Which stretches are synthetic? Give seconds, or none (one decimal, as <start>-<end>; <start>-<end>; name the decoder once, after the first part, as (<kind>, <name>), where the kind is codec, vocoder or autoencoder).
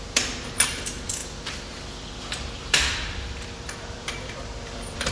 0.0-5.1 (vocoder, BigVGAN v2)